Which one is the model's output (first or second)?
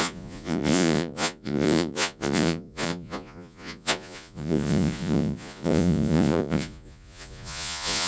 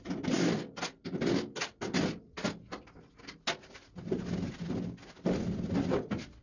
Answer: first